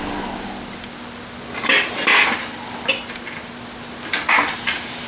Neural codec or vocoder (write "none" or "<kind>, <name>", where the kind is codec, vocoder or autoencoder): none